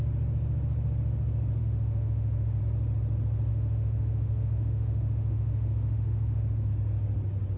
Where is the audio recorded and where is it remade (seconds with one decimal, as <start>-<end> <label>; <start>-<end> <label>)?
0.0-1.6 recorded; 1.6-2.6 remade; 2.6-3.5 recorded; 3.5-6.7 remade; 6.7-7.6 recorded